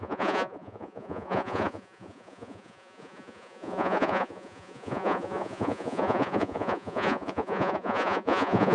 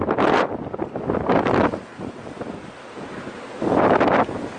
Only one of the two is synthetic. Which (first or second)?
first